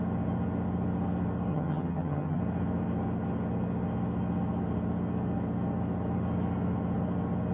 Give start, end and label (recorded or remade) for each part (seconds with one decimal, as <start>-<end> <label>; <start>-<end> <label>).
0.0-1.5 recorded; 1.5-2.4 remade; 2.4-7.5 recorded